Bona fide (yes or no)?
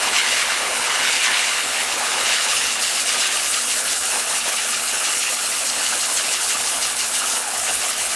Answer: no